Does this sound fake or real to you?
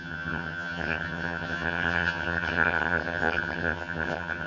fake